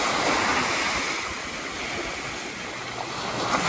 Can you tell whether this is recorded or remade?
recorded